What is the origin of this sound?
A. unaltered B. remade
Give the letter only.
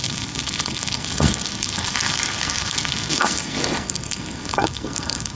B